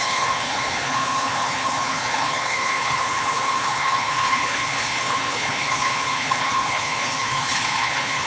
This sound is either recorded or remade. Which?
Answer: remade